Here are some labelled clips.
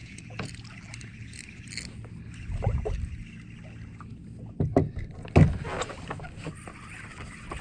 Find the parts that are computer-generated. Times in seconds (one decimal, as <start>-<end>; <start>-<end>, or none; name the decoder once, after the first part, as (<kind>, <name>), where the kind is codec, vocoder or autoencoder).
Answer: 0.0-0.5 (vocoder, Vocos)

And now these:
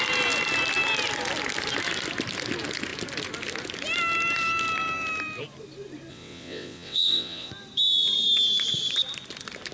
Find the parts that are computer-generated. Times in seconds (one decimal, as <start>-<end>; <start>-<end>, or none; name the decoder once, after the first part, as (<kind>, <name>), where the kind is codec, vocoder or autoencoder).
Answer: 6.1-7.5 (vocoder, WaveNeXt)

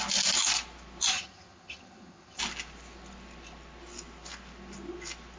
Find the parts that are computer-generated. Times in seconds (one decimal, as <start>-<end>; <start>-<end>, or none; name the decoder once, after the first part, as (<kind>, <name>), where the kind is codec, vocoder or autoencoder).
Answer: 1.1-2.4 (vocoder, HiFi-GAN)

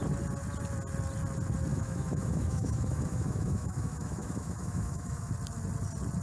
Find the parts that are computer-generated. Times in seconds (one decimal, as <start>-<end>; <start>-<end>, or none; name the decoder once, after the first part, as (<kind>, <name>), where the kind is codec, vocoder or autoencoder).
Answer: 1.7-5.3 (autoencoder, DAC-VAE)

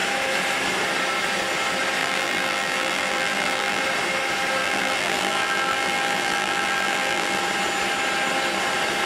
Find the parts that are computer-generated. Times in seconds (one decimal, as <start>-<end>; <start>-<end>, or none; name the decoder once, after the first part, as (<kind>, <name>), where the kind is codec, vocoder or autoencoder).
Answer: 2.0-3.8 (vocoder, BigVGAN v2); 4.6-7.4

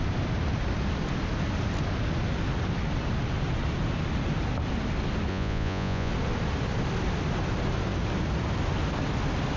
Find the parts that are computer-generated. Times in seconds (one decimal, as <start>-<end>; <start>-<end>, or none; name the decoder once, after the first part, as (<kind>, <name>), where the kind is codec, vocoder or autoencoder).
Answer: 5.3-6.1 (vocoder, Vocos)

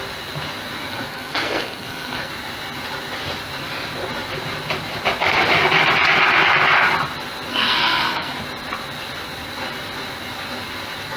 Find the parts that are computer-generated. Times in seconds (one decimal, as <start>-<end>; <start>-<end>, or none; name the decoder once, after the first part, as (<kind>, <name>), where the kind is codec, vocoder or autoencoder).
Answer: 0.9-2.3 (codec, SNAC); 7.5-8.3

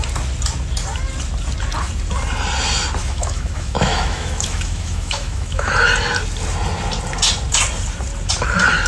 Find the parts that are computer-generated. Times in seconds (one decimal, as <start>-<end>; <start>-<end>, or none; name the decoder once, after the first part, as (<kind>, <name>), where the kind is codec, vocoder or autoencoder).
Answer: 3.0-5.7 (autoencoder, DAC-VAE)